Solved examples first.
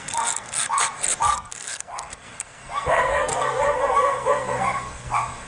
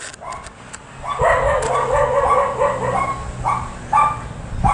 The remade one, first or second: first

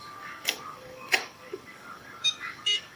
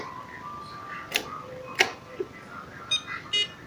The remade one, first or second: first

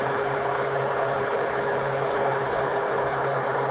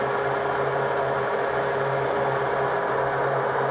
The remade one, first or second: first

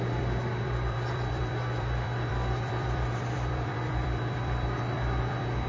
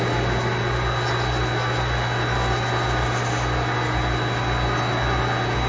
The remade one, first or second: first